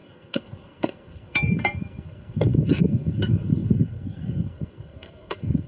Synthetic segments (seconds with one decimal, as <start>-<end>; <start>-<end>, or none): 0.0-5.7